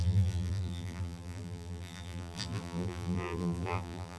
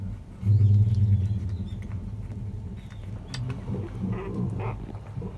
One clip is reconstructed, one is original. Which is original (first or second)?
second